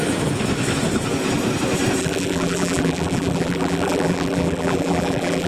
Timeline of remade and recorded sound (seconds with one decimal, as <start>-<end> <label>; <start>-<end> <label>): 0.0-2.0 recorded; 2.0-5.5 remade

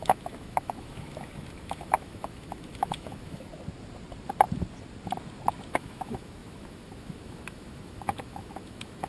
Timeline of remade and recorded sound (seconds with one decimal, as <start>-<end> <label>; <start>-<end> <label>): 0.0-3.5 remade; 3.5-5.7 recorded; 5.7-9.1 remade

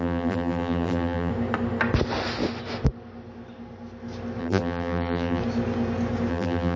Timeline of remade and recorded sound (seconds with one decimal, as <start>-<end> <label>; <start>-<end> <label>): 0.0-1.3 remade; 1.3-4.4 recorded; 4.4-5.4 remade; 5.4-6.3 recorded; 6.3-6.8 remade

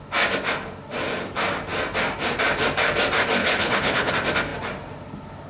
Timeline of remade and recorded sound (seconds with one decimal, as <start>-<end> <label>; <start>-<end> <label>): 0.0-3.4 recorded; 3.4-4.1 remade; 4.1-5.5 recorded

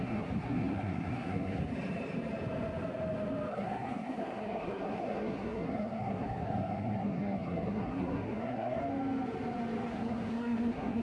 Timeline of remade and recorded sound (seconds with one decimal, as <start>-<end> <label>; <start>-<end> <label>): 0.0-1.7 remade; 1.7-3.5 recorded; 3.5-8.8 remade; 8.8-9.9 recorded; 9.9-11.0 remade

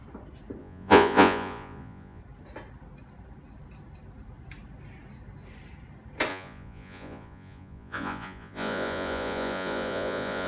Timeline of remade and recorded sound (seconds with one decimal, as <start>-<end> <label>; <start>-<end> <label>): 0.0-0.6 recorded; 0.6-2.2 remade; 2.2-6.3 recorded; 6.3-10.5 remade

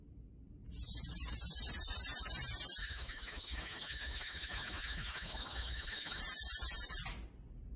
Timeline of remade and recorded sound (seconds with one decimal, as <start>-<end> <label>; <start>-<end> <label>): 0.0-2.8 recorded; 2.8-6.2 remade; 6.2-7.8 recorded